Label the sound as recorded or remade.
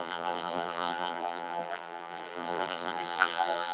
remade